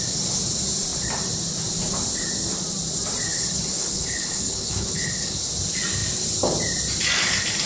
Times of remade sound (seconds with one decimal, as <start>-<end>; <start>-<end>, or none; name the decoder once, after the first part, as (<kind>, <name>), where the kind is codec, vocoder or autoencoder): 3.3-5.5 (codec, HILCodec)